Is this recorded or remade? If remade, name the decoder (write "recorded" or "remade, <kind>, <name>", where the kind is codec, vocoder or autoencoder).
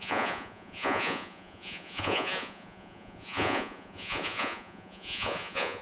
remade, vocoder, Vocos